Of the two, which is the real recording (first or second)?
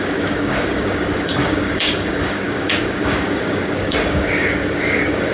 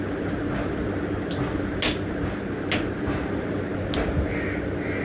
second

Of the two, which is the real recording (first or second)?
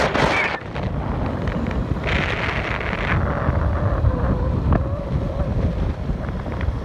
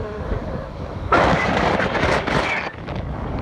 first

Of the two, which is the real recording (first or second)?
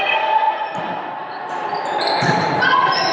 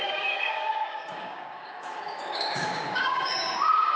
first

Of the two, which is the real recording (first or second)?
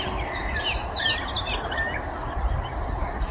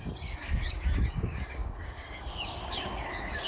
first